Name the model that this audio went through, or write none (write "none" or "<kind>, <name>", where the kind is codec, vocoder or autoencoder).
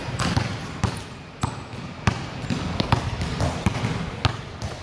none